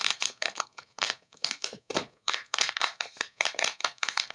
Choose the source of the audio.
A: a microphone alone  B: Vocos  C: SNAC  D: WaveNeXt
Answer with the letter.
C